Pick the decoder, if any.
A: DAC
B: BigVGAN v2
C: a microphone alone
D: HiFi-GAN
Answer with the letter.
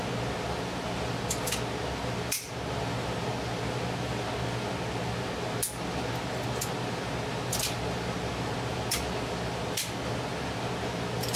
C